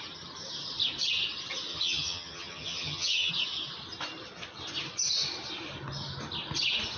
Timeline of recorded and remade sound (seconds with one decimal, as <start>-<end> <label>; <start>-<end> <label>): 0.0-1.7 recorded; 1.7-3.3 remade; 3.3-7.0 recorded